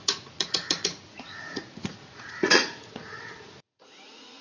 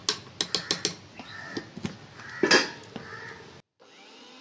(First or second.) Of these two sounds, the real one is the second